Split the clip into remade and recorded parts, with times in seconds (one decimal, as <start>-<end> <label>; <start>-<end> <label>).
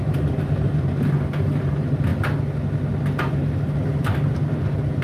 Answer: 0.0-2.1 remade; 2.1-3.1 recorded; 3.1-5.0 remade